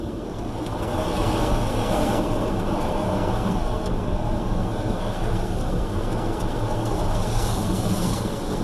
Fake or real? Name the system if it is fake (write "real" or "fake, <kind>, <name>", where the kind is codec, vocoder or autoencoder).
fake, codec, SNAC